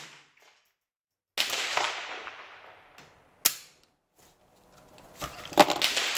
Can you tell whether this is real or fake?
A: real